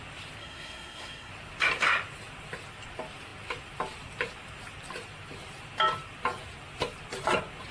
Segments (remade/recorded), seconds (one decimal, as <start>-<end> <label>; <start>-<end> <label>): 0.0-0.4 recorded; 0.4-1.3 remade; 1.3-7.7 recorded